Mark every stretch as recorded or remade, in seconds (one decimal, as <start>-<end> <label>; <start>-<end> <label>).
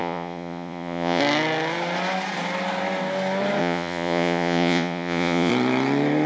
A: 0.0-1.2 remade; 1.2-3.6 recorded; 3.6-5.5 remade; 5.5-6.3 recorded